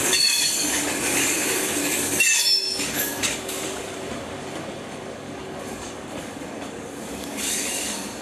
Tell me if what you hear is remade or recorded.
remade